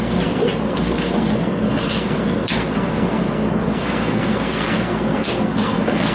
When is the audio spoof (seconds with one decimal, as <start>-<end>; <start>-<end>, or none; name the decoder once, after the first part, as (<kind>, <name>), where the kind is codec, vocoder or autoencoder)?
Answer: 0.0-6.1 (codec, SNAC)